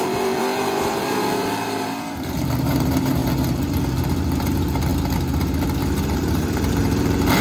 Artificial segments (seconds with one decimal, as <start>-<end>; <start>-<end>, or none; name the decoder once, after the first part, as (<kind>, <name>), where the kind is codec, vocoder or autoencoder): 0.0-3.2 (vocoder, BigVGAN v2); 4.5-4.9; 6.1-7.4